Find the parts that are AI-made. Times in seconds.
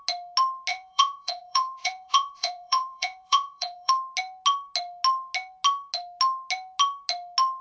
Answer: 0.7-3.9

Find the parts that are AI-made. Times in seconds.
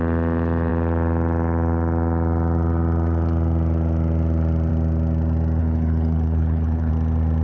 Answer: 5.6-6.9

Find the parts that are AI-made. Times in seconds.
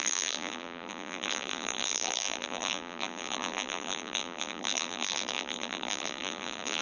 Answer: 0.0-6.8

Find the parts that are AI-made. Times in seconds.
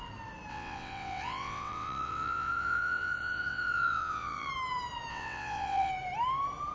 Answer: 0.5-4.5; 5.1-5.9